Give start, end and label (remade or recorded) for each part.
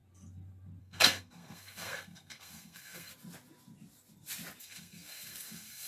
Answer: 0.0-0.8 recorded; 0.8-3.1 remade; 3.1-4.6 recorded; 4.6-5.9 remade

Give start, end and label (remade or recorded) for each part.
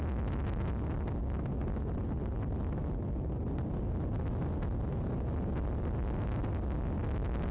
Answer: 0.0-7.5 recorded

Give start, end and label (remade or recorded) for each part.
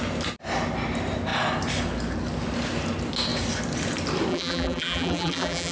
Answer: 0.0-4.3 recorded; 4.3-5.7 remade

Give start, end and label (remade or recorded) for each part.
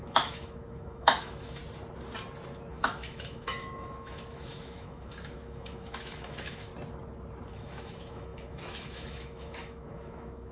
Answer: 0.0-1.6 remade; 1.6-2.7 recorded; 2.7-6.7 remade; 6.7-7.5 recorded; 7.5-10.5 remade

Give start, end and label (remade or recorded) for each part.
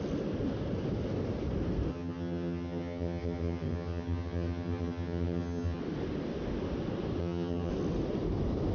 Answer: 0.0-1.9 recorded; 1.9-5.8 remade; 5.8-7.2 recorded; 7.2-7.7 remade; 7.7-8.7 recorded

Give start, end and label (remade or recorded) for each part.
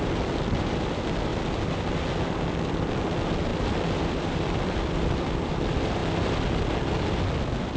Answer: 0.0-3.5 recorded; 3.5-5.5 remade; 5.5-7.8 recorded